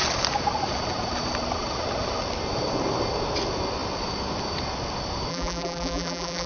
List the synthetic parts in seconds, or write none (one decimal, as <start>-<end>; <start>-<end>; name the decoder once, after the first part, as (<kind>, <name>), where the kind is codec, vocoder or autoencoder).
5.3-6.5 (vocoder, BigVGAN v2)